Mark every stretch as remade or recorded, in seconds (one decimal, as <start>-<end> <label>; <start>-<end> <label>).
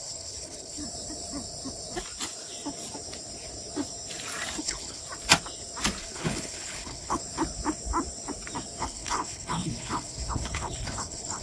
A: 0.0-0.8 remade; 0.8-4.6 recorded; 4.6-5.0 remade; 5.0-6.0 recorded; 6.0-7.2 remade; 7.2-8.8 recorded; 8.8-11.4 remade